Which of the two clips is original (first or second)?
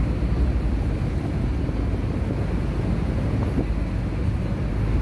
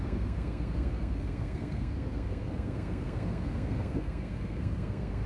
first